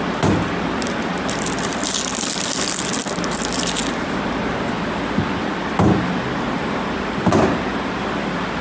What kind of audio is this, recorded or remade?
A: recorded